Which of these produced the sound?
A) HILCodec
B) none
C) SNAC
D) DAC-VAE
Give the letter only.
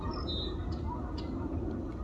B